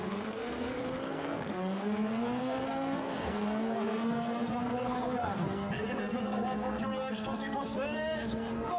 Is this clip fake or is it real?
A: fake